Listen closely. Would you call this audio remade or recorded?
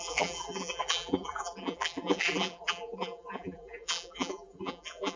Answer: remade